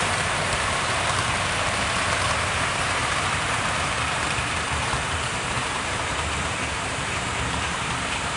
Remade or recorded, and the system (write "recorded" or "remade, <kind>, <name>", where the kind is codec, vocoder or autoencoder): remade, vocoder, BigVGAN v2